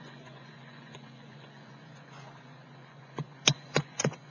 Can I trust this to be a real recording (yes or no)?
no